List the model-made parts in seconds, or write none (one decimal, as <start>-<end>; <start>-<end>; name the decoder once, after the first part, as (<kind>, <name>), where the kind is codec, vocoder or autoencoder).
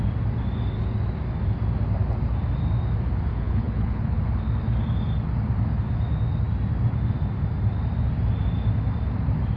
3.3-4.2 (codec, HILCodec)